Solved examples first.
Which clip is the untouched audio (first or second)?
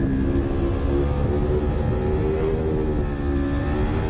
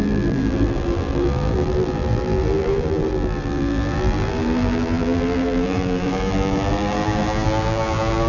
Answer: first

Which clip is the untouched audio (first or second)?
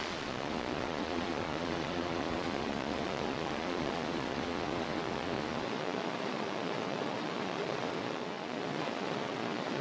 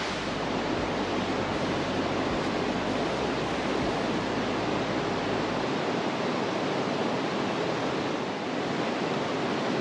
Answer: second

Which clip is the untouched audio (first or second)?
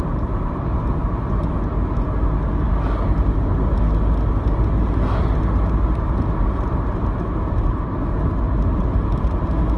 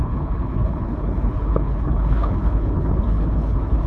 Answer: first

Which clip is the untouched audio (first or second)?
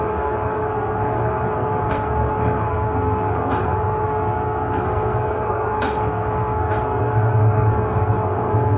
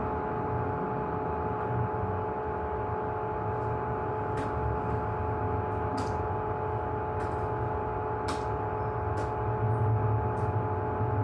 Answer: second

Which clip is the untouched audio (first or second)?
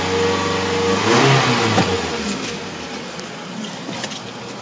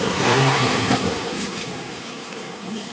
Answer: first